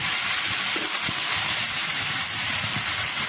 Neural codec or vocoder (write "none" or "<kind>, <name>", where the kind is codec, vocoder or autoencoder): vocoder, BigVGAN v2